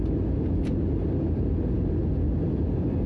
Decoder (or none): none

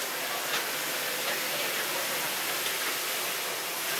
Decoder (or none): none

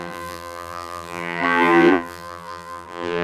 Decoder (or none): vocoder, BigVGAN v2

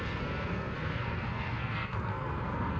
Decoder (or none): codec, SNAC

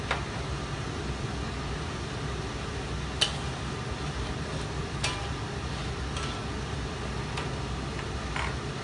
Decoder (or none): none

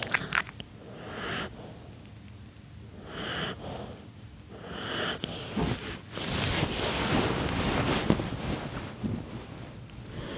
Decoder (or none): none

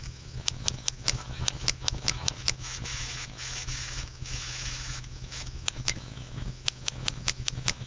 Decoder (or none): autoencoder, DAC-VAE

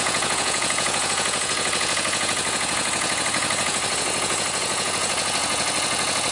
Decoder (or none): vocoder, Vocos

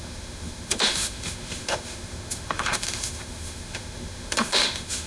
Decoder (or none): autoencoder, DAC-VAE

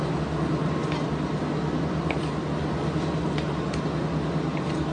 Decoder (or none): none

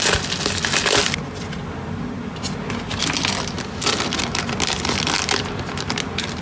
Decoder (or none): none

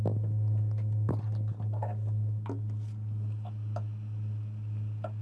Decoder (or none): none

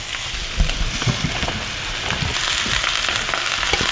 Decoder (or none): none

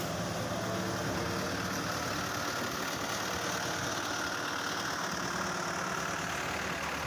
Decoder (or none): none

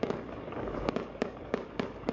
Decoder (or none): codec, DAC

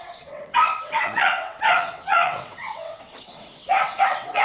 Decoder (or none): vocoder, WaveNeXt